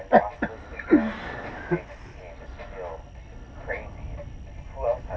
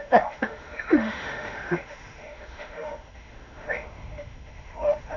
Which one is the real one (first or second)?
first